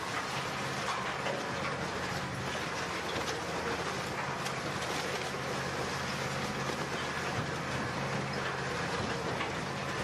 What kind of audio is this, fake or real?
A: fake